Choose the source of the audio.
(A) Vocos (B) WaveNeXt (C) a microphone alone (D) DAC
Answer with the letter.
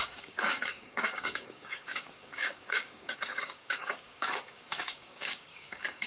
D